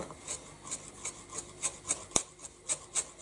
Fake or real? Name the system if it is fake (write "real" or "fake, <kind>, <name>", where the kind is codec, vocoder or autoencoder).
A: real